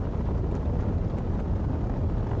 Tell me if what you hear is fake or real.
real